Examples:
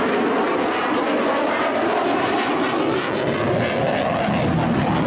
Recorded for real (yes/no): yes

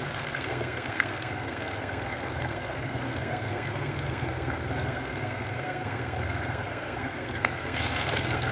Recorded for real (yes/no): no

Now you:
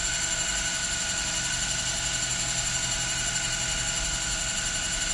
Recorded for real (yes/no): yes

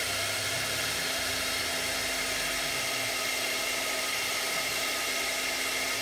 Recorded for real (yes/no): yes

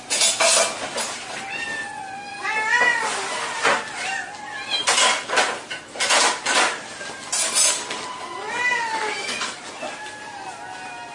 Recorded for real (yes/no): yes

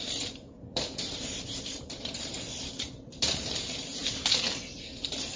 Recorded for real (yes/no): no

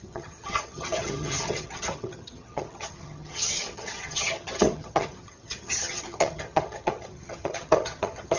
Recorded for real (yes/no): no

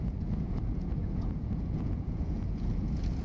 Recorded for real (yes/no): no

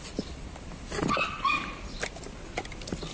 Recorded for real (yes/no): yes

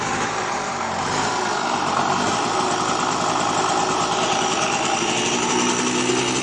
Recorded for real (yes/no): yes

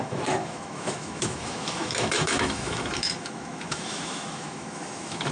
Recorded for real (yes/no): no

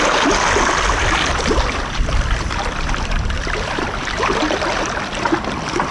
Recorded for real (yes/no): yes